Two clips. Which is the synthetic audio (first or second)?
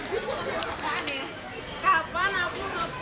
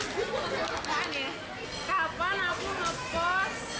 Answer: first